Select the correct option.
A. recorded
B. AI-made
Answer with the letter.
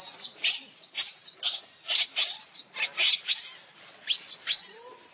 A